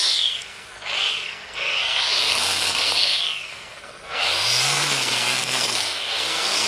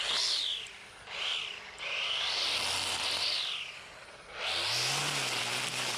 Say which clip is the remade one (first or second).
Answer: first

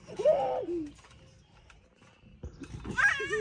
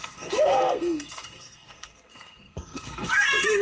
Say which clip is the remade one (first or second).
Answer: second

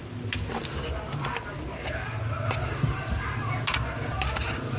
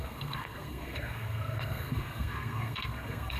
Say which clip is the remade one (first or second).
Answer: second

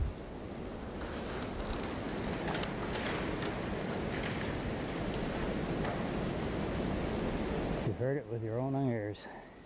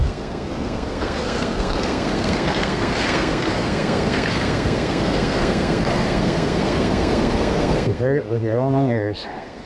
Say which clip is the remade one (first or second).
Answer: second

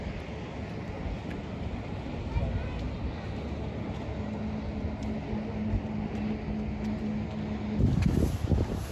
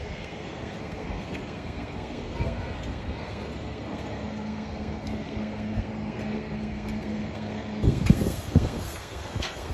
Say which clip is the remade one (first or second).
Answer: second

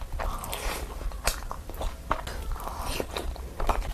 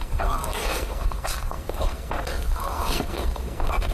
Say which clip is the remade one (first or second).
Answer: second